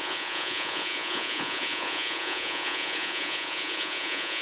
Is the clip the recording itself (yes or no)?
no